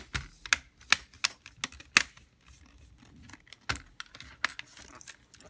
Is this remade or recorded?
recorded